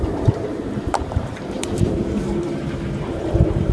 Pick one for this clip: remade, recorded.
remade